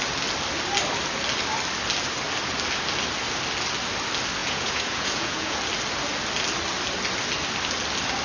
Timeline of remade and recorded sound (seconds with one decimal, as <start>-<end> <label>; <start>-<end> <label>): 0.0-4.4 recorded; 4.4-5.6 remade; 5.6-8.2 recorded